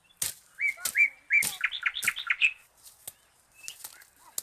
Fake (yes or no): no